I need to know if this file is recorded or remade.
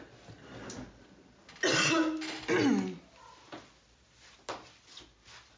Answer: recorded